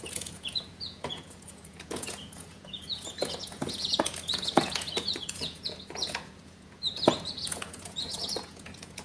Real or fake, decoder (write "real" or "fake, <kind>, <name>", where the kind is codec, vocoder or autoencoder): fake, vocoder, Vocos